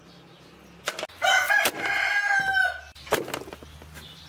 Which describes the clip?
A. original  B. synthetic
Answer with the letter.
A